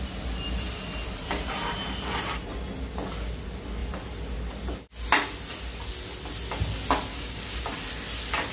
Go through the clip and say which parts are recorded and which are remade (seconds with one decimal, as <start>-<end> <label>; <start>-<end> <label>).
0.0-7.1 recorded; 7.1-7.6 remade; 7.6-8.5 recorded